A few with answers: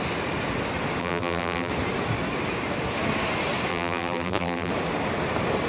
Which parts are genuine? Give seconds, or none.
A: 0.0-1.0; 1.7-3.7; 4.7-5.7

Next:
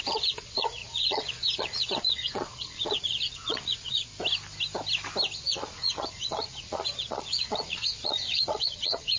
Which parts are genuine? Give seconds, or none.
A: 4.1-5.4